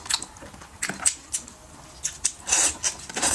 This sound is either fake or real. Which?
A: real